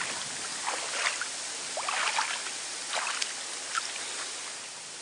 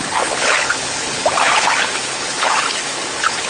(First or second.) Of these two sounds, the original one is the first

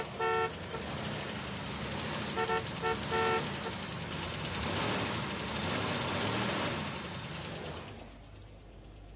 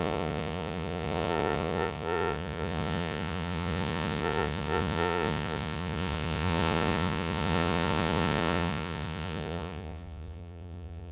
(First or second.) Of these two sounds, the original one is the first